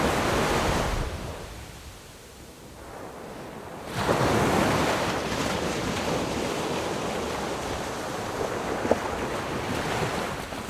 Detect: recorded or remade recorded